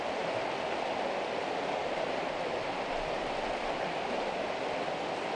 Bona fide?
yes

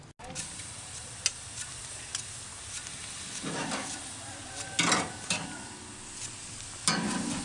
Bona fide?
yes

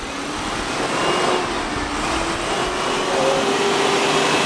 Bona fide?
yes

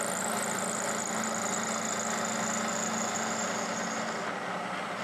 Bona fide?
yes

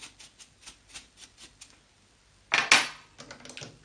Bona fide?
yes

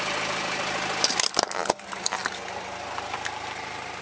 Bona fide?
yes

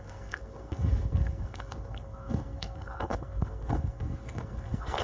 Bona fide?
no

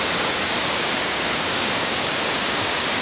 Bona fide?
no